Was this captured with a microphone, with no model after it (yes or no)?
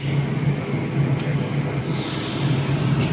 yes